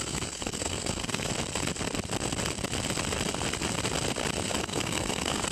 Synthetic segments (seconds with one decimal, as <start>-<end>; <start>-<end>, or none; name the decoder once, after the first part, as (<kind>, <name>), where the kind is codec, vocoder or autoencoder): 0.0-1.3 (codec, SNAC); 4.6-5.5